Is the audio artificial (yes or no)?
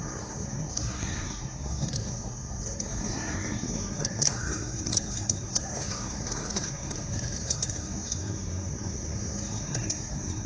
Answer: yes